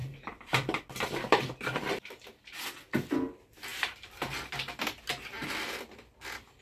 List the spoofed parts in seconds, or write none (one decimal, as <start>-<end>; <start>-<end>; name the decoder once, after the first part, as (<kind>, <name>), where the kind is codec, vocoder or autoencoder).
0.0-2.6 (vocoder, BigVGAN v2); 3.7-4.5